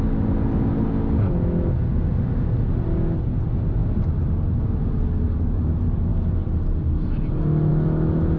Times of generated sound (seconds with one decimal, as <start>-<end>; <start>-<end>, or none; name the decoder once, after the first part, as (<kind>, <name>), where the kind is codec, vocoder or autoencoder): none